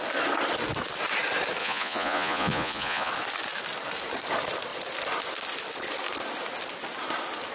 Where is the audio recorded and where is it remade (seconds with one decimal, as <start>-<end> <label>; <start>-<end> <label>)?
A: 0.0-1.6 recorded; 1.6-3.1 remade; 3.1-7.5 recorded